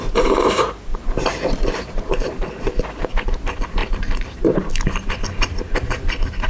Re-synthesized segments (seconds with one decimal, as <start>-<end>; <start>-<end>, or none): 0.9-3.3